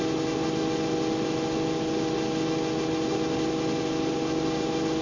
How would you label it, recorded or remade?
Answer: recorded